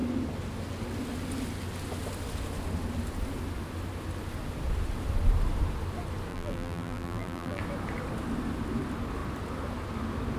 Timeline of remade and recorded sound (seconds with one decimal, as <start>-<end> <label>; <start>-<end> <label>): 0.0-6.3 recorded; 6.3-7.6 remade; 7.6-10.4 recorded